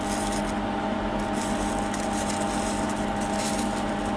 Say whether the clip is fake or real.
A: real